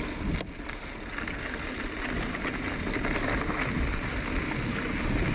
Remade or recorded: recorded